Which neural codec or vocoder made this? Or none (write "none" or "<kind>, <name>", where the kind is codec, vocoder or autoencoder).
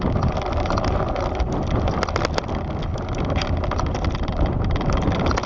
none